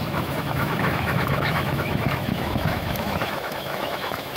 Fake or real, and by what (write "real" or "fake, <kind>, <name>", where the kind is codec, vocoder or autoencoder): fake, autoencoder, DAC-VAE